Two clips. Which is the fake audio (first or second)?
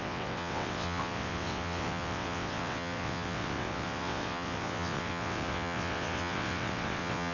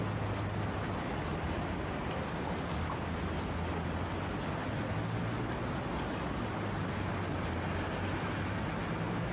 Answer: first